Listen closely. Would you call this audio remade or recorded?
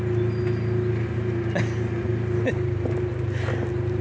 recorded